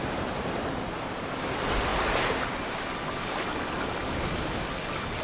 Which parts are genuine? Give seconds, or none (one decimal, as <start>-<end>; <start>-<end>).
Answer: 1.9-5.2